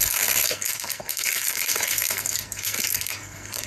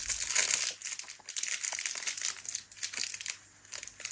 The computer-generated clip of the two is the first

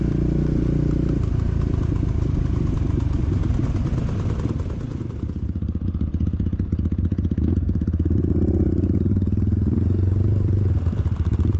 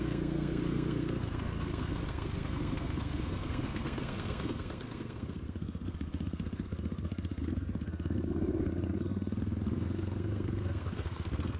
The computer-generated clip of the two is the second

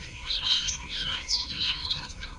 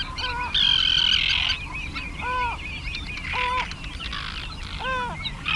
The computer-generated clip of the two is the first